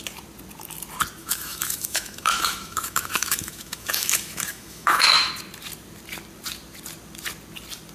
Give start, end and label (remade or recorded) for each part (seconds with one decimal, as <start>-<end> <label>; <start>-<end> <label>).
0.0-1.2 recorded; 1.2-5.3 remade; 5.3-7.9 recorded